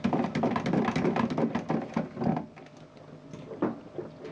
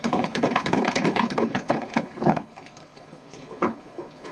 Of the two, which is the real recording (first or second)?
first